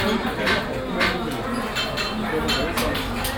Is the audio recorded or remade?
recorded